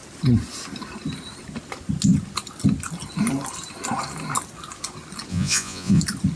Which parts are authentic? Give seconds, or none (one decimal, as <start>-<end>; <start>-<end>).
0.0-5.3; 6.0-6.4